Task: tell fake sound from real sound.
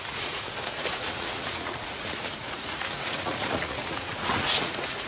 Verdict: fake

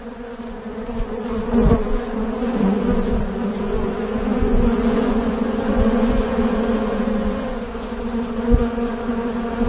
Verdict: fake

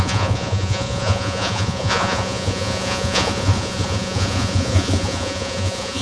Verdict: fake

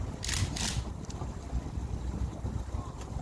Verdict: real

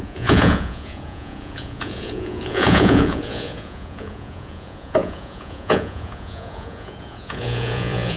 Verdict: fake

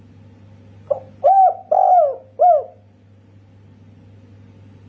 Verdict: real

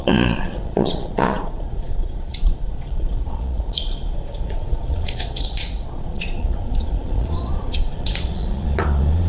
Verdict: fake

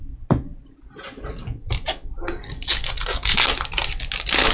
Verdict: real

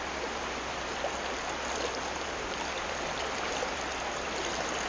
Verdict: real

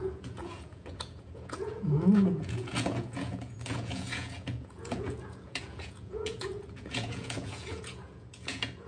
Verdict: fake